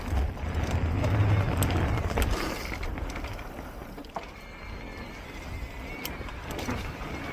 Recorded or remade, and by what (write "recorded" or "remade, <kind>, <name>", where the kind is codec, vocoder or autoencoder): recorded